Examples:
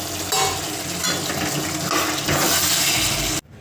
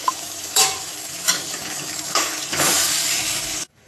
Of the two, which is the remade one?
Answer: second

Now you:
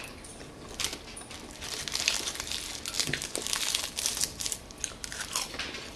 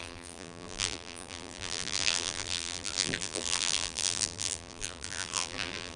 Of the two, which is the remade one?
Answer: second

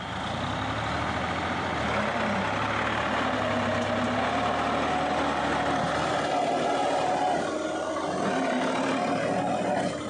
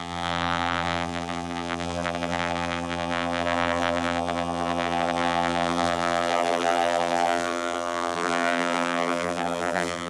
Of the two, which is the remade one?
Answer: second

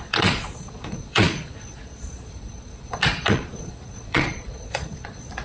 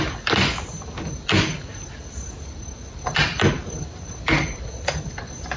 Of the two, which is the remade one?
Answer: first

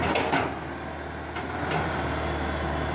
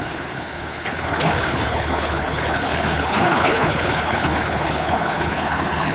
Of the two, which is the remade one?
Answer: second